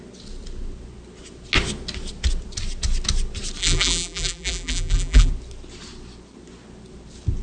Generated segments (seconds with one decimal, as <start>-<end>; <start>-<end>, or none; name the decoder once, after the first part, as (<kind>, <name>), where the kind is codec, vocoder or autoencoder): 3.6-5.3 (vocoder, BigVGAN v2)